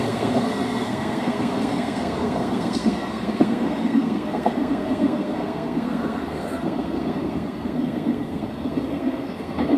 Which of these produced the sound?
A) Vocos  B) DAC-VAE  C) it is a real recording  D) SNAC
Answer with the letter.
D